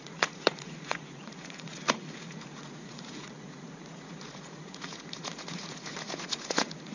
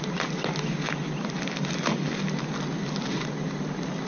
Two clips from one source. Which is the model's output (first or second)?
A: first